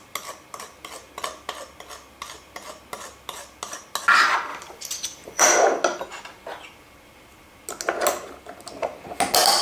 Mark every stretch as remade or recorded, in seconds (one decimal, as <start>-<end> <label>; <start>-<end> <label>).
0.0-4.5 recorded; 4.5-5.4 remade; 5.4-9.6 recorded